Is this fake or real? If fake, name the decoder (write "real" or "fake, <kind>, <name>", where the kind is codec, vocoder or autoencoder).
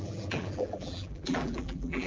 fake, vocoder, BigVGAN v2